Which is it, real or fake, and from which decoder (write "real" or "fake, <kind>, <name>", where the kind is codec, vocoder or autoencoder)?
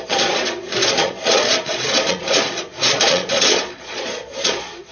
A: fake, vocoder, Vocos